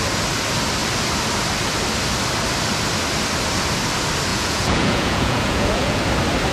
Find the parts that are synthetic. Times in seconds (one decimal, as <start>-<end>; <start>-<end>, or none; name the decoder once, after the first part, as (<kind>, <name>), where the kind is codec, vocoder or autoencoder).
4.3-6.0 (vocoder, Vocos)